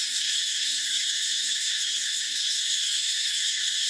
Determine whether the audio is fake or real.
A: fake